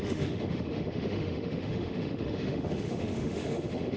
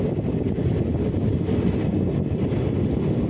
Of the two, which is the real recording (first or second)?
second